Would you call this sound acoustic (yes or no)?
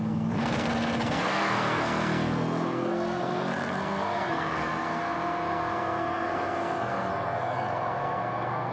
no